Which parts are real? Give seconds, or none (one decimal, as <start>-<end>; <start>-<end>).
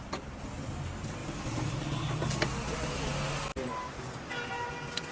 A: 0.0-5.1